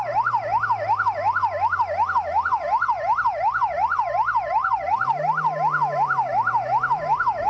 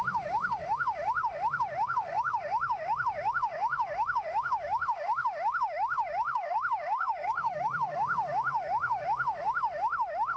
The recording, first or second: first